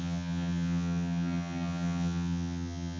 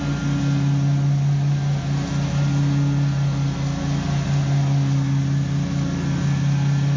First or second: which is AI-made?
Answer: first